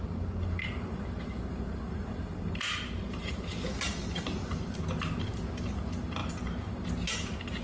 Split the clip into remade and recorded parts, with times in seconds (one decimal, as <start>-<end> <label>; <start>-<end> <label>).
0.0-7.6 recorded